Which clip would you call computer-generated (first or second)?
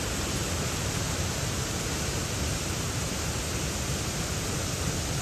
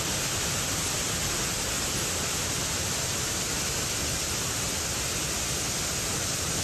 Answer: first